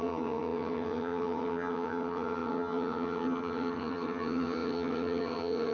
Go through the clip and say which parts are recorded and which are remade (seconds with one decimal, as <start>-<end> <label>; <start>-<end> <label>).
0.0-5.7 remade

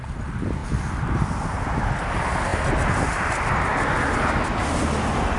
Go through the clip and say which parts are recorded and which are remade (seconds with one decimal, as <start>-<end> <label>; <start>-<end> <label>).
0.0-5.4 recorded

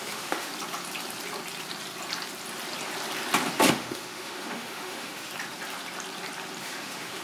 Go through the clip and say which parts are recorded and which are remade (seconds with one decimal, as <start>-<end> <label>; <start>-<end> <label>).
0.0-0.5 remade; 0.5-3.7 recorded; 3.7-5.3 remade; 5.3-6.6 recorded; 6.6-7.2 remade

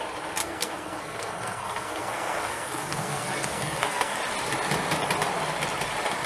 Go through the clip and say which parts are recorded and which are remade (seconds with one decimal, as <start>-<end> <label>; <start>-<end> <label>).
0.0-0.4 recorded; 0.4-4.2 remade; 4.2-6.3 recorded

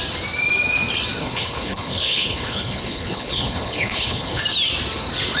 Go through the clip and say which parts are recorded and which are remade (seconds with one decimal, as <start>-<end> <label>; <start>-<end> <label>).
0.0-1.2 recorded; 1.2-4.4 remade; 4.4-5.4 recorded